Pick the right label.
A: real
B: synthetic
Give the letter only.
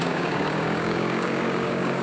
B